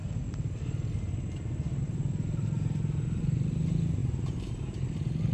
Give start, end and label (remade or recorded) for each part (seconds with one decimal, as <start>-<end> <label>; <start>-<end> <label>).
0.0-4.0 recorded; 4.0-4.5 remade; 4.5-5.3 recorded

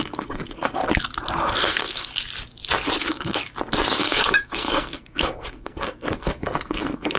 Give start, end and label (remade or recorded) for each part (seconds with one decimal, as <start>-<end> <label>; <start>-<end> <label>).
0.0-0.8 remade; 0.8-1.5 recorded; 1.5-2.1 remade; 2.1-3.0 recorded; 3.0-3.4 remade; 3.4-4.0 recorded; 4.0-7.2 remade

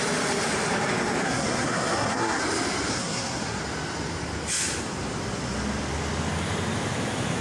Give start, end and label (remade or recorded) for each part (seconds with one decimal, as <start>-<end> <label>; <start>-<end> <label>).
0.0-1.2 recorded; 1.2-2.4 remade; 2.4-2.9 recorded; 2.9-3.6 remade; 3.6-7.4 recorded

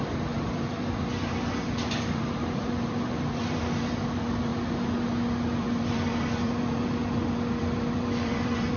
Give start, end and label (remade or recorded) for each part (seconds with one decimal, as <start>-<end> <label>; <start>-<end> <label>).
0.0-4.5 remade; 4.5-5.6 recorded; 5.6-7.0 remade; 7.0-7.6 recorded; 7.6-8.8 remade

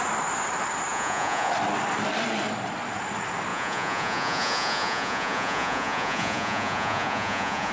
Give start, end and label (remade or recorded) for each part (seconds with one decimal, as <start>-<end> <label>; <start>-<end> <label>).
0.0-0.9 recorded; 0.9-1.5 remade; 1.5-3.5 recorded; 3.5-7.7 remade

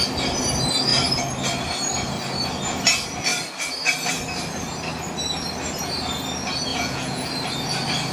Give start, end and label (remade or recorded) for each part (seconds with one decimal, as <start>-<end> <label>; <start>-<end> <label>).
0.0-6.7 recorded; 6.7-7.3 remade; 7.3-8.1 recorded

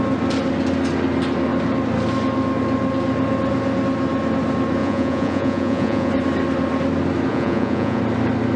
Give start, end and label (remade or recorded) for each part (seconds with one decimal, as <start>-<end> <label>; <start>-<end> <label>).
0.0-4.8 recorded; 4.8-6.1 remade; 6.1-7.3 recorded; 7.3-8.0 remade; 8.0-8.6 recorded